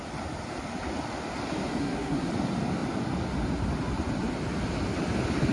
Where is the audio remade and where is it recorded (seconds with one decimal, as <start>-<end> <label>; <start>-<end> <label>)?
0.0-1.8 recorded; 1.8-2.3 remade; 2.3-5.5 recorded